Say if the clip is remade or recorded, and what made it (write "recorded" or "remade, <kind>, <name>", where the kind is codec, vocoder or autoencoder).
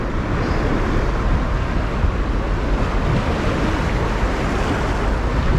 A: recorded